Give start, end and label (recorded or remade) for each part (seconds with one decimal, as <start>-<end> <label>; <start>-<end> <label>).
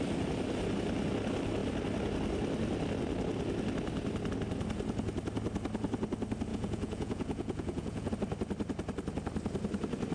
0.0-6.5 recorded; 6.5-8.1 remade; 8.1-10.1 recorded